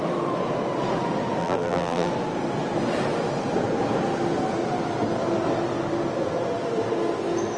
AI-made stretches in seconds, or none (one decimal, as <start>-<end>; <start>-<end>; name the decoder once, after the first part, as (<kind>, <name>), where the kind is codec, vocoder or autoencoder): 1.4-2.1 (vocoder, BigVGAN v2)

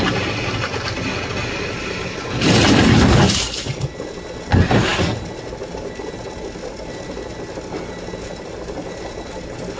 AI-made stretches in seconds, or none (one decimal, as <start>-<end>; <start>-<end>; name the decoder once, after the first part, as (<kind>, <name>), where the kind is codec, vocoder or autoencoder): none

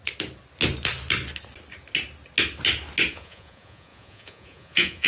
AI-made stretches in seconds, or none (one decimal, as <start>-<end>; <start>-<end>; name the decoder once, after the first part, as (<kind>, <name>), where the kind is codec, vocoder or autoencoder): 3.1-5.1 (vocoder, Vocos)

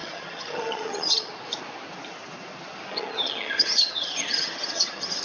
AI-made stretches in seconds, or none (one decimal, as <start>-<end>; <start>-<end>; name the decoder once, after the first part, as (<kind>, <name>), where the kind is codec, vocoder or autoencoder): 0.0-1.3 (vocoder, HiFi-GAN); 2.9-5.2

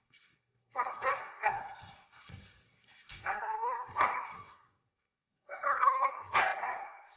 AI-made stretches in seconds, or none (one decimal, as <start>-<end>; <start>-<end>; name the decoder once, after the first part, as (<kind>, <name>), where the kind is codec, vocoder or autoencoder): 0.0-7.2 (codec, SNAC)

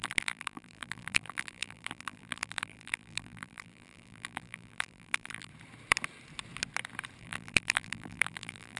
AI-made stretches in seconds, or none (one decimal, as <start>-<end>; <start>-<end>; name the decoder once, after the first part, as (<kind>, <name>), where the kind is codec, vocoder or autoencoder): 0.0-5.5 (vocoder, BigVGAN v2); 7.2-8.8

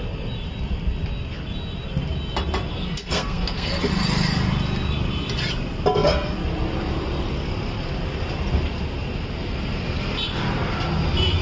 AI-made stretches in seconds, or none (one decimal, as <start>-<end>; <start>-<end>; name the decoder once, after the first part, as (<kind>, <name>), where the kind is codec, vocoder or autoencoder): 2.7-3.7 (codec, SNAC)

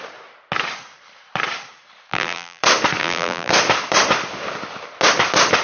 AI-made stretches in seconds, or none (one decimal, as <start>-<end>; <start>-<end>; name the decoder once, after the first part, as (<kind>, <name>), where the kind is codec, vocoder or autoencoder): 2.1-2.6 (vocoder, BigVGAN v2); 3.0-3.5